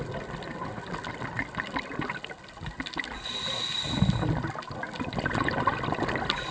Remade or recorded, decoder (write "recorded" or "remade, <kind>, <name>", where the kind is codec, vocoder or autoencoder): recorded